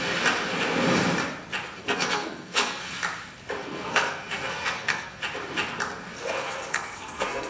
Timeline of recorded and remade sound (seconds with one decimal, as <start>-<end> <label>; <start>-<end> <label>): 0.0-1.8 recorded; 1.8-2.9 remade; 2.9-3.6 recorded; 3.6-5.2 remade; 5.2-6.1 recorded; 6.1-7.5 remade